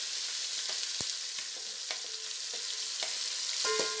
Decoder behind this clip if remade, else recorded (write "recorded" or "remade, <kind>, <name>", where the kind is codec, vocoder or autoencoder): recorded